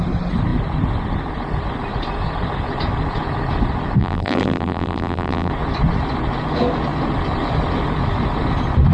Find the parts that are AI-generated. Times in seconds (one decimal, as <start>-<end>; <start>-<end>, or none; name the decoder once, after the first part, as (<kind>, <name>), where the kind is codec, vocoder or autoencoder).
4.0-5.5 (vocoder, BigVGAN v2)